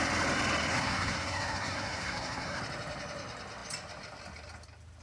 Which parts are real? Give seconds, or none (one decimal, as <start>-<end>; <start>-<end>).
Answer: 0.0-0.7; 2.6-5.0